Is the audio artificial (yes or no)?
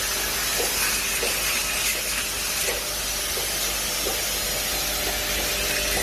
no